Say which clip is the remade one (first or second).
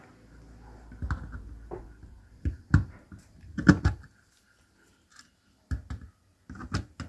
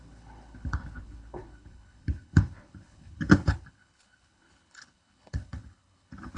second